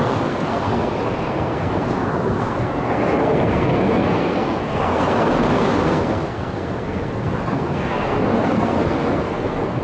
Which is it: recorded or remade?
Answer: remade